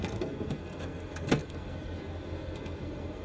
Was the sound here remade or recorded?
remade